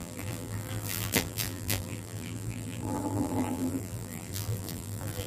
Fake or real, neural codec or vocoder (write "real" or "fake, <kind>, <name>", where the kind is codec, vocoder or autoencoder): fake, vocoder, BigVGAN v2